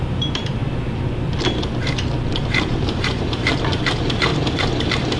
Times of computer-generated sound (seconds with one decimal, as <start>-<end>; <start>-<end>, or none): 0.0-0.6; 2.4-5.2